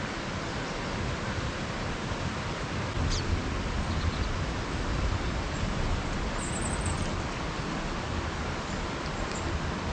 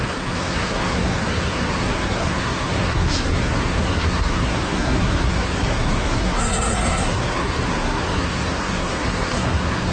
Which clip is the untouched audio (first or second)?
first